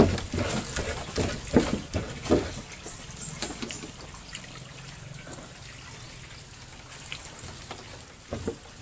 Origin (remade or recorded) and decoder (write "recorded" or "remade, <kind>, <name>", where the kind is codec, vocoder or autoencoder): recorded